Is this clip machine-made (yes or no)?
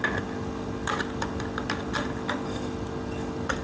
no